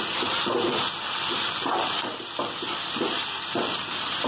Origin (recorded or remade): recorded